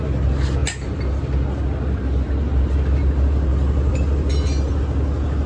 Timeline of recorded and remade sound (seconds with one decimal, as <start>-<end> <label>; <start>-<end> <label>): 0.0-3.5 recorded; 3.5-4.7 remade; 4.7-5.5 recorded